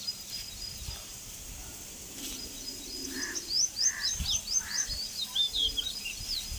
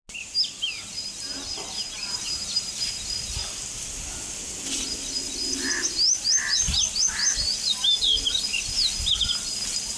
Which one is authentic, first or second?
second